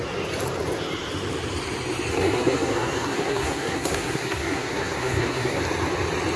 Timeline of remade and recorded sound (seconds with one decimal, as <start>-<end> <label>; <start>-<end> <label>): 0.0-2.1 recorded; 2.1-5.6 remade; 5.6-6.4 recorded